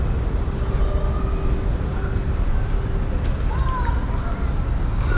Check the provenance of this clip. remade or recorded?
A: recorded